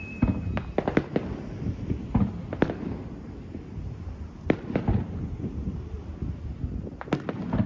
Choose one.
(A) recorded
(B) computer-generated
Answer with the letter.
A